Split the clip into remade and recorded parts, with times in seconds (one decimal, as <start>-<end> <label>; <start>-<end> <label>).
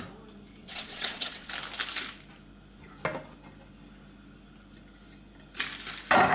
0.0-0.6 recorded; 0.6-1.5 remade; 1.5-6.3 recorded